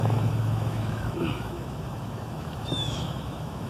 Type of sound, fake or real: fake